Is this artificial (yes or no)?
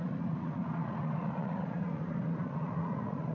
yes